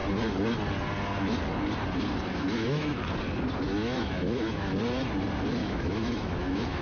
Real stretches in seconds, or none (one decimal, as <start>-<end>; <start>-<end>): 0.0-2.3; 3.0-3.8; 4.7-5.6